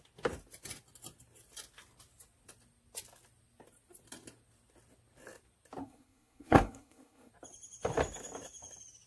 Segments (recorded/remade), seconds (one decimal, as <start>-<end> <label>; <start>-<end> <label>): 0.0-5.8 recorded; 5.8-7.3 remade; 7.3-9.1 recorded